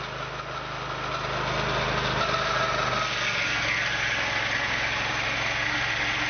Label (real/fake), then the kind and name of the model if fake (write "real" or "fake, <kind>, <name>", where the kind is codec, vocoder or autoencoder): real